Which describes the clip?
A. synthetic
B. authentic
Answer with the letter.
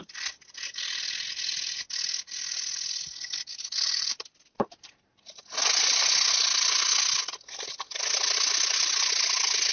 B